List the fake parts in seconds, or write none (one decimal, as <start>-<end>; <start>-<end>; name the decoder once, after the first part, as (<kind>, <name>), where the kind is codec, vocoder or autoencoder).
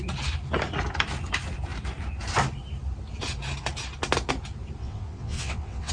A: 4.8-5.9 (vocoder, WaveNeXt)